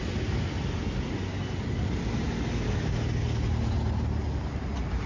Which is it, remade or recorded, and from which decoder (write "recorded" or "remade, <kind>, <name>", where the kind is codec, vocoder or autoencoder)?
recorded